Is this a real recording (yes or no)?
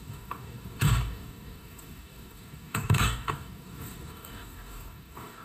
no